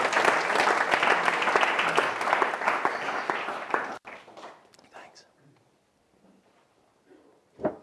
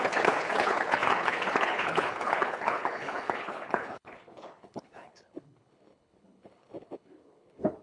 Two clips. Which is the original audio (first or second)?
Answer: first